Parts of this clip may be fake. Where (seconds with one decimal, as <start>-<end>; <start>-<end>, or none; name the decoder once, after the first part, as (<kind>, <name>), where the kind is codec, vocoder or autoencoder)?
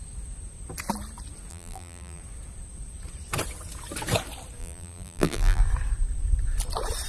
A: 1.5-2.2 (vocoder, BigVGAN v2); 4.6-5.6